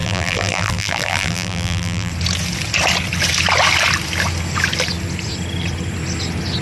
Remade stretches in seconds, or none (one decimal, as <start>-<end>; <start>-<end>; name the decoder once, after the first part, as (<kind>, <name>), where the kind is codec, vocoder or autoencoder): 0.0-2.1 (vocoder, BigVGAN v2)